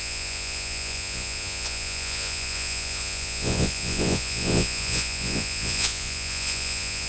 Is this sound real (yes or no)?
no